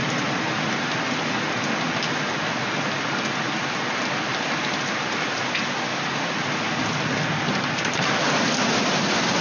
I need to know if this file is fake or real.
real